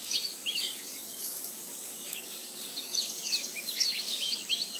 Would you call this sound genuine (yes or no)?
no